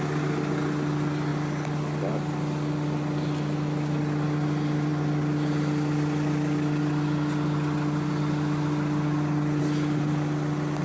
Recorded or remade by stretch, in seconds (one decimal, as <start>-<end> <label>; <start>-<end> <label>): 0.0-10.8 recorded